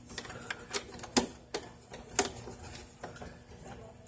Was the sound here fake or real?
real